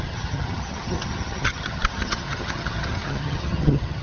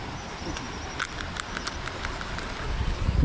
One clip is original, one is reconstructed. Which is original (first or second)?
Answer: second